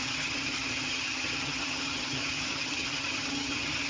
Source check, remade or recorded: remade